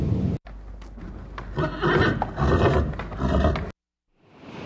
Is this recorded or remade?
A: recorded